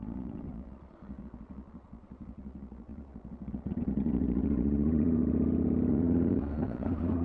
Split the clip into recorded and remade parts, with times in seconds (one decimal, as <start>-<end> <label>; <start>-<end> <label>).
0.0-5.2 remade; 5.2-5.9 recorded; 5.9-7.2 remade